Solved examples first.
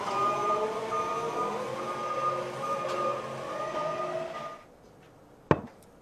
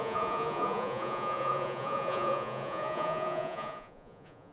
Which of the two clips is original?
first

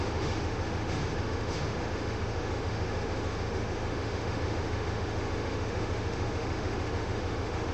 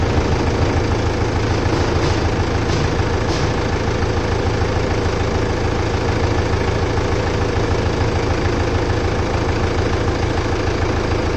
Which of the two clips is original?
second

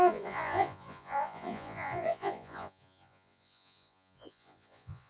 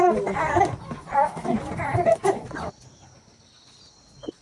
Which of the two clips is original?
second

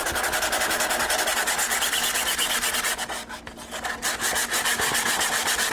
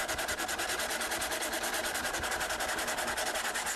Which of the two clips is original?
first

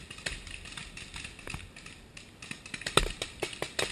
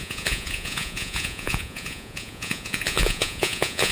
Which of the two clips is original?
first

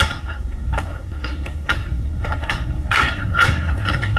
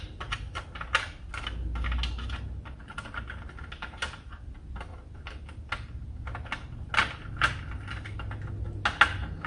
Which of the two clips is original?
second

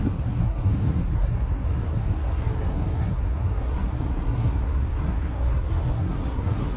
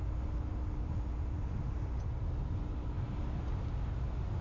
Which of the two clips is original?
second